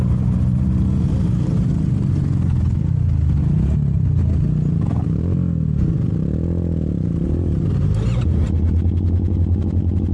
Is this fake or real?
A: real